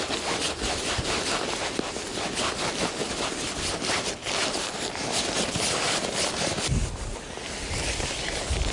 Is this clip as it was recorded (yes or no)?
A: yes